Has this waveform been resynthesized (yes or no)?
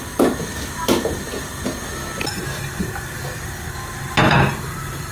no